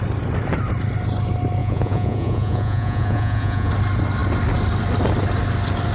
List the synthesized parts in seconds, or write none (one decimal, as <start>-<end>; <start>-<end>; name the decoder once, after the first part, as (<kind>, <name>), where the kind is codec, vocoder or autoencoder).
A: 1.6-3.7 (vocoder, Vocos)